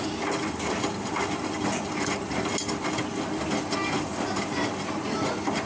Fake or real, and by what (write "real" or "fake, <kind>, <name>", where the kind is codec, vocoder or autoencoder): real